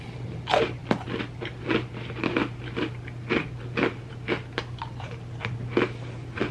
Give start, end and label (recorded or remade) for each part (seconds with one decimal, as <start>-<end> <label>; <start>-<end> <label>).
0.0-6.5 recorded